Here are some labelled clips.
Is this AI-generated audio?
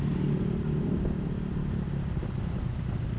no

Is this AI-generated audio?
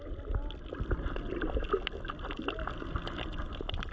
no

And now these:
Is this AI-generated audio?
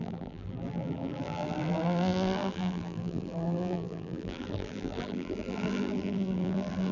yes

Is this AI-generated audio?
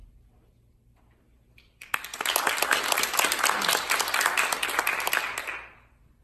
no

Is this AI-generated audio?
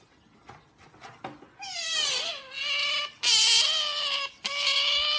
no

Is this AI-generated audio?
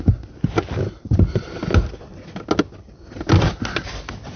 no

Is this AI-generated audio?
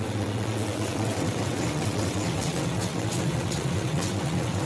yes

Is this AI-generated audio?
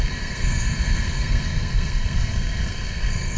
yes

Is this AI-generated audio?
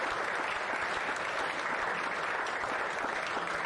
no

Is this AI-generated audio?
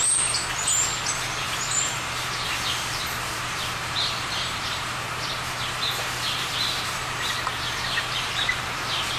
yes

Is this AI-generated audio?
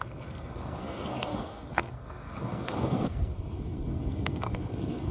yes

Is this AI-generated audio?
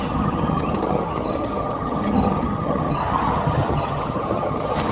yes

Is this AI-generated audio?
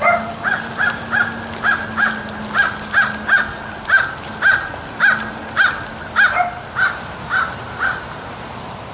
no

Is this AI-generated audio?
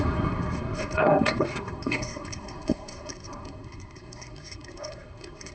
yes